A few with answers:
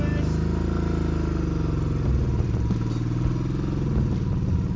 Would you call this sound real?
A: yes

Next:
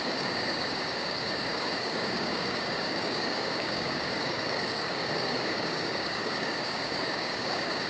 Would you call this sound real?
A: no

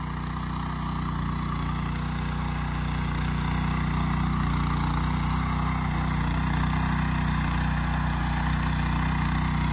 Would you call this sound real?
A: yes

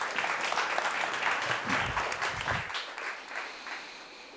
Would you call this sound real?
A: yes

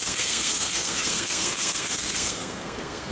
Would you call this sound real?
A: no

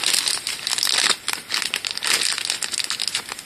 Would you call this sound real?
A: yes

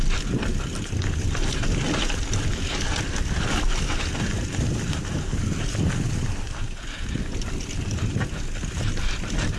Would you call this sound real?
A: yes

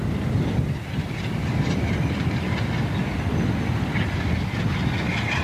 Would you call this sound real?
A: yes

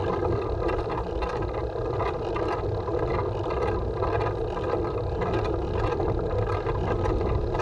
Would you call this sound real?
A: yes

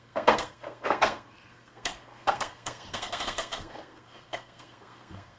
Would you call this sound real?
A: no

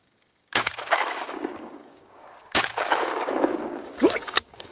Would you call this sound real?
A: no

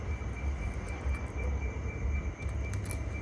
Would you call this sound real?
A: yes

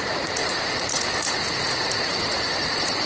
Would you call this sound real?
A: no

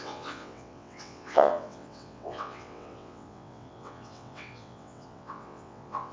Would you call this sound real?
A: no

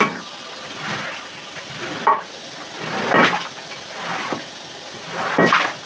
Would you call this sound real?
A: no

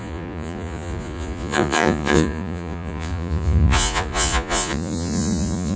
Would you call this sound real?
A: no